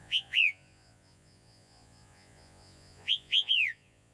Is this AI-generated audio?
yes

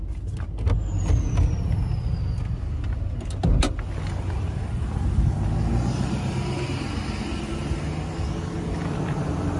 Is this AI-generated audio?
no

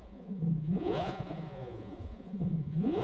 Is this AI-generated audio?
yes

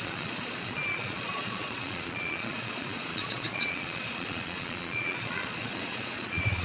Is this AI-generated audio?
yes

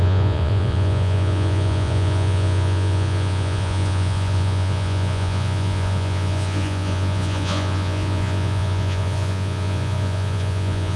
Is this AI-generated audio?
yes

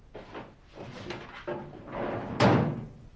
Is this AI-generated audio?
no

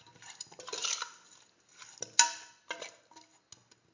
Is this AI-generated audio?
no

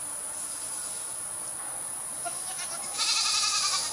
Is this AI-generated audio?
no